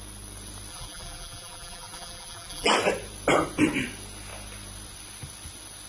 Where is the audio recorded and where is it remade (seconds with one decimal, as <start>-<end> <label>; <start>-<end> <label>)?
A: 0.0-0.7 recorded; 0.7-2.7 remade; 2.7-5.9 recorded